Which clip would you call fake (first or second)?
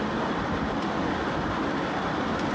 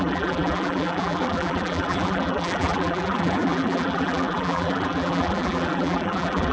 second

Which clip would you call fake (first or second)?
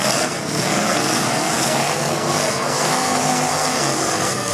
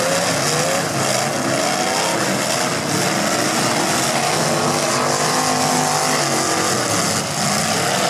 first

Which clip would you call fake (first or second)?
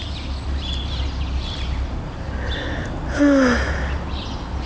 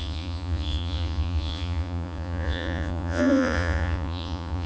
second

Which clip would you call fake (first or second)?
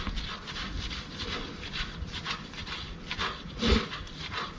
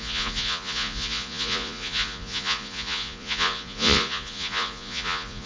second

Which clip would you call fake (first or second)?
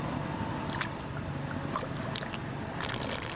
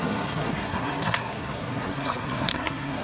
second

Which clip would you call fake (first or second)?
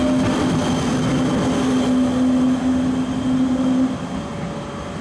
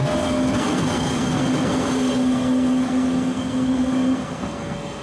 second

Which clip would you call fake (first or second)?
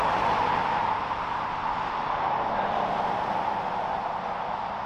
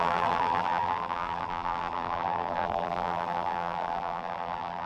second